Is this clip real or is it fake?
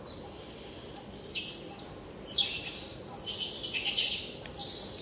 real